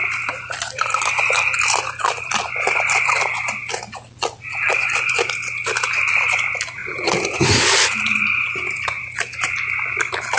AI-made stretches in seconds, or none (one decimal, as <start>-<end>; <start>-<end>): 0.0-6.8; 9.9-10.4